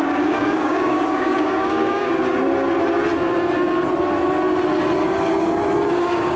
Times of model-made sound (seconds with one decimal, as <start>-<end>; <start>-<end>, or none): 0.0-2.1; 5.9-6.4